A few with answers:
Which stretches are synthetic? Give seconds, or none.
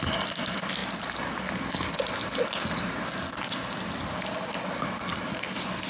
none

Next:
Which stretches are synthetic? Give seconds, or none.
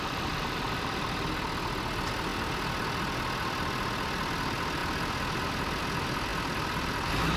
none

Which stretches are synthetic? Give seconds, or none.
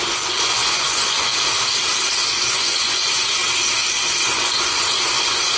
0.0-1.3 (vocoder, Vocos); 2.3-3.4; 4.2-5.6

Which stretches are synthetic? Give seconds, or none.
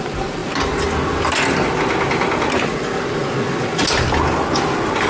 none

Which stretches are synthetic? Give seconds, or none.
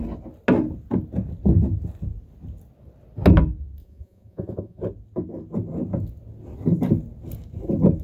3.8-4.8 (vocoder, Vocos)